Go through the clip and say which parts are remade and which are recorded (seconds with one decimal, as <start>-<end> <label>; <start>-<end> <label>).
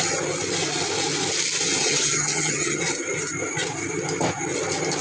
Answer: 0.0-1.8 recorded; 1.8-2.8 remade; 2.8-5.0 recorded